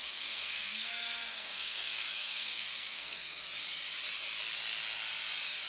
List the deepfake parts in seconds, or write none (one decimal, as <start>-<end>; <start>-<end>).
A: 0.0-3.4